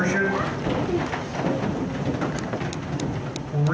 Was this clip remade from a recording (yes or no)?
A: no